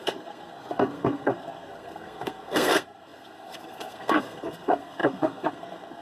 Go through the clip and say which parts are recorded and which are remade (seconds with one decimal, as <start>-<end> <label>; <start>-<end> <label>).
0.0-6.0 remade